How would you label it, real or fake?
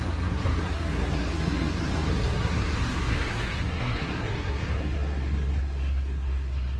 fake